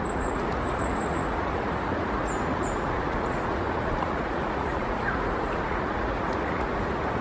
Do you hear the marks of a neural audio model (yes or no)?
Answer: yes